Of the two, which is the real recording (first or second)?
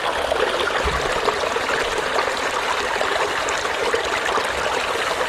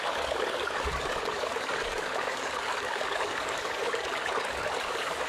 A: first